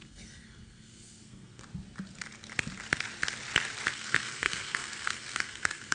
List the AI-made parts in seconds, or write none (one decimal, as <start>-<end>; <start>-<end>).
0.0-1.6; 3.9-5.9